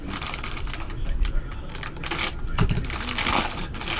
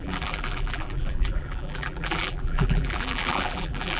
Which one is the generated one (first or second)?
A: second